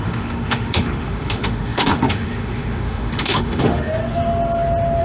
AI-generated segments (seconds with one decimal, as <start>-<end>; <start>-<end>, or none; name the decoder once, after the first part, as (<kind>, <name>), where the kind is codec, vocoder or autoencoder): 0.0-4.0 (autoencoder, DAC-VAE)